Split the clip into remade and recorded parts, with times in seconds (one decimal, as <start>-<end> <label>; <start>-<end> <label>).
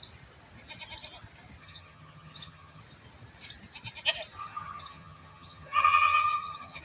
0.0-1.6 recorded; 1.6-2.8 remade; 2.8-4.4 recorded; 4.4-6.8 remade